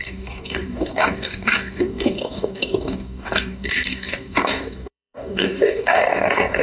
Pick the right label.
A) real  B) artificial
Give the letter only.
B